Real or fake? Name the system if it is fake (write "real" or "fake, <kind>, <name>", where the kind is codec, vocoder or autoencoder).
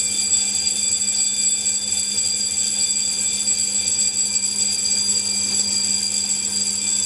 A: real